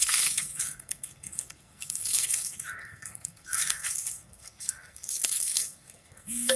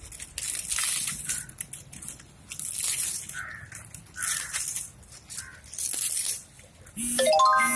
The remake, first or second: first